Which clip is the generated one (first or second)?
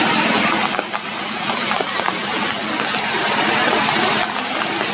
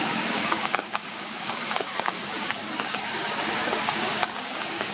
second